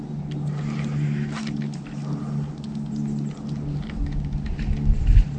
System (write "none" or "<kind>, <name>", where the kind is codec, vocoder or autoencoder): none